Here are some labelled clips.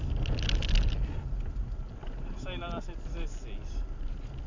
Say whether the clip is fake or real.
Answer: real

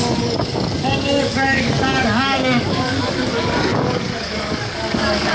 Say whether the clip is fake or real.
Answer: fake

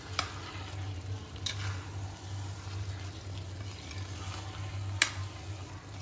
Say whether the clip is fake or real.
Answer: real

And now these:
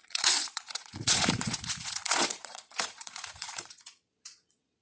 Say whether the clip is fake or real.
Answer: fake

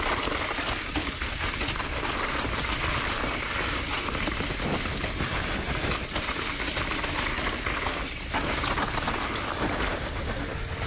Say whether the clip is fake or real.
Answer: real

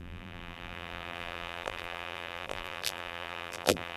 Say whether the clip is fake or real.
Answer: fake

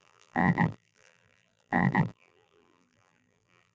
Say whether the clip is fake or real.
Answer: fake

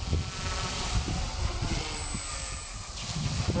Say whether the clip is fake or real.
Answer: real